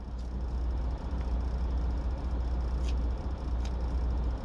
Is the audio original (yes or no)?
yes